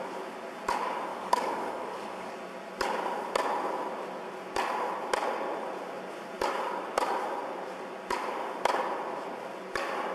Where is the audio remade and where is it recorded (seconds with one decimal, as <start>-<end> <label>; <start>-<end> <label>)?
0.0-1.1 recorded; 1.1-2.3 remade; 2.3-10.1 recorded